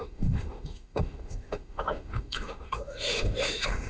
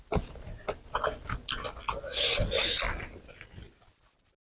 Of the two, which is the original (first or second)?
second